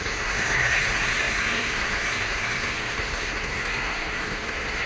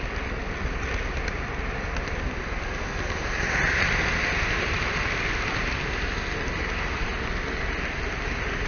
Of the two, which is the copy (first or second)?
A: first